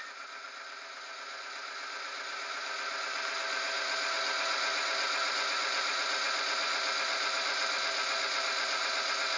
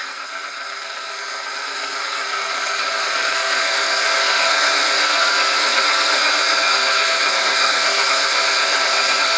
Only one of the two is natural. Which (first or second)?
first